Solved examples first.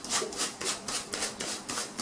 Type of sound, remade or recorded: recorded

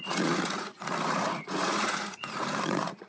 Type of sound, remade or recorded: remade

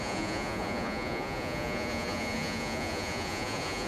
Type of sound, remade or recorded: remade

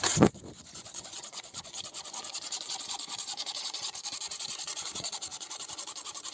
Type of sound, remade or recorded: remade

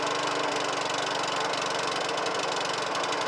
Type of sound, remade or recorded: recorded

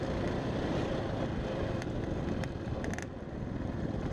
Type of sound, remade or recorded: recorded